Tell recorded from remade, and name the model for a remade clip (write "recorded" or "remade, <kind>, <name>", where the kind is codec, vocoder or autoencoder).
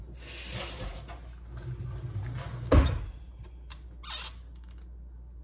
recorded